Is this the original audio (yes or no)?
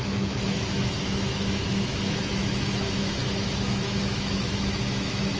no